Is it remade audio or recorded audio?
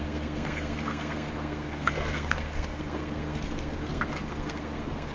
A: remade